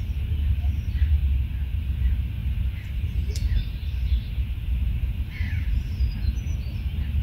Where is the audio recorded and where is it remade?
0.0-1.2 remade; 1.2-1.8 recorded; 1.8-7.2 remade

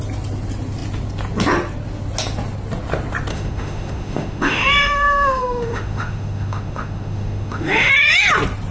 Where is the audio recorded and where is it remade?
0.0-3.3 recorded; 3.3-7.9 remade; 7.9-8.7 recorded

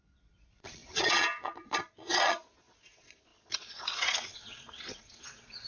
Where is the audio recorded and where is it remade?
0.0-5.7 remade